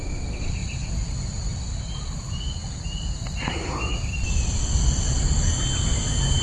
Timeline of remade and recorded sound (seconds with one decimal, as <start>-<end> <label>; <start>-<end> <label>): 0.0-6.4 recorded